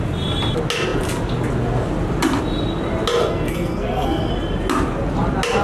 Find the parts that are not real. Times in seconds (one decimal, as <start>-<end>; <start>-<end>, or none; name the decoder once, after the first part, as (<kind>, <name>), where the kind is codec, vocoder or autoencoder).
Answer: 3.2-4.3 (codec, SNAC)